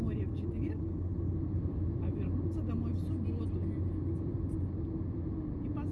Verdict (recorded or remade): recorded